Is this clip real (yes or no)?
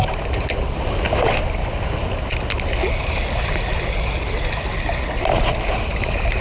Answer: yes